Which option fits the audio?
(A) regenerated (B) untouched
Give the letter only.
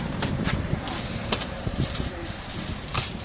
A